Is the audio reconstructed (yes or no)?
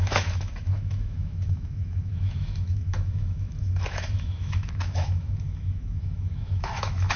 yes